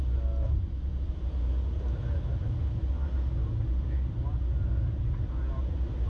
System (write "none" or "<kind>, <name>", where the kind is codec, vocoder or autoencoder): none